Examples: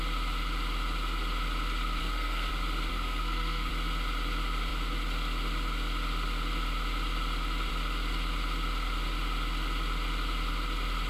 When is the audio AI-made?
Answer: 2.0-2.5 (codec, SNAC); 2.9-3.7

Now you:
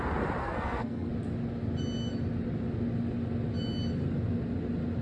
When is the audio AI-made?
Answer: 0.4-1.1 (codec, SNAC)

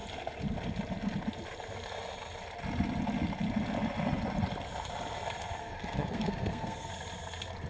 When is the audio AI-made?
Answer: 5.6-6.9 (codec, SNAC)